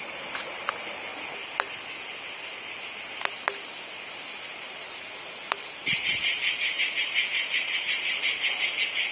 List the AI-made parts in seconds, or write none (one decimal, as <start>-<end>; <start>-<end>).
0.0-0.6; 4.5-8.1